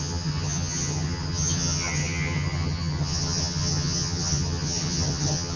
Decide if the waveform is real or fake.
fake